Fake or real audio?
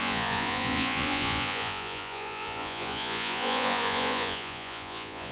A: fake